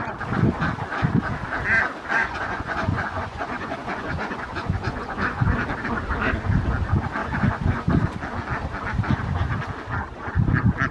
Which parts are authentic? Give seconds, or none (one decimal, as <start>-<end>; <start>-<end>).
0.0-2.2; 5.6-7.2; 7.9-10.9